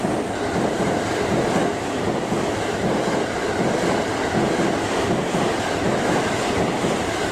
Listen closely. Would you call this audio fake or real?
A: real